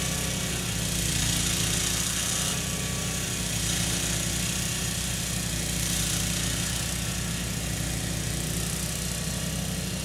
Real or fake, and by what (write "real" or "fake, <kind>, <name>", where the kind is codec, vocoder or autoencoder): real